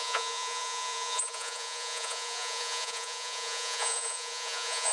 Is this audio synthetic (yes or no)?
yes